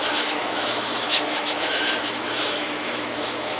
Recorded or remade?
remade